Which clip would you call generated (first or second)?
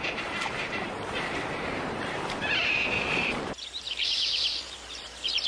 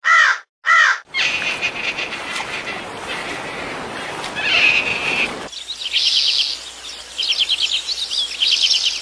first